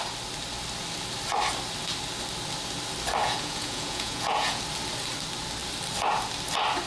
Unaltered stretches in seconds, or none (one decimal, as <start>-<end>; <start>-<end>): 0.0-3.2; 4.6-6.9